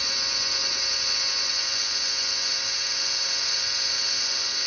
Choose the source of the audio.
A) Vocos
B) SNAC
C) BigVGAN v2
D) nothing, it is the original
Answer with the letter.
A